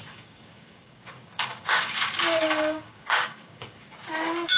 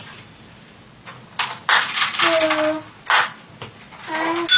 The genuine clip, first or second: second